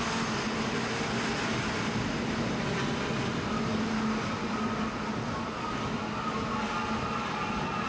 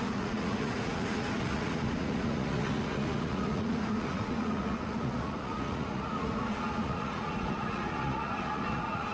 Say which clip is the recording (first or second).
first